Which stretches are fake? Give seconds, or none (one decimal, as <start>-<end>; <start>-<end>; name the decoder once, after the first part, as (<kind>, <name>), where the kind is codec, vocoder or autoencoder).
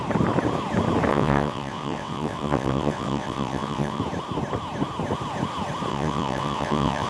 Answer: 1.1-4.0 (vocoder, WaveNeXt); 5.9-7.1